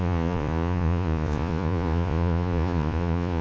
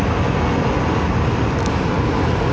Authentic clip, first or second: second